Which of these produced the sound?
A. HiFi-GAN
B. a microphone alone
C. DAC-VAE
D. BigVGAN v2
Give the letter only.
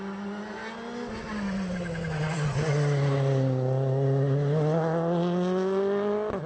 B